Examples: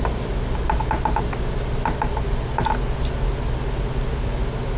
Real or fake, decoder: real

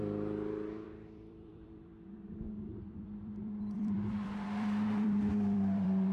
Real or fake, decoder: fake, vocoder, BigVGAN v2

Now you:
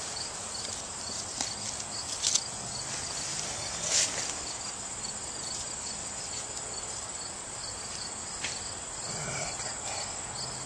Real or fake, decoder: real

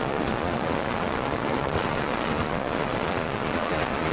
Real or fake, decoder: fake, vocoder, Vocos